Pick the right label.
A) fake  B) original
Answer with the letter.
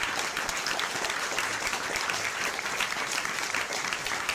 A